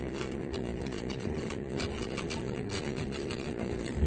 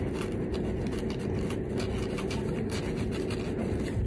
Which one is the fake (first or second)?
first